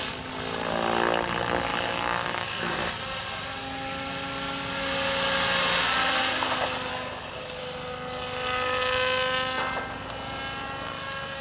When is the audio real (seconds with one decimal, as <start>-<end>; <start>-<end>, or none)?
0.0-1.7; 2.9-6.9; 7.6-11.4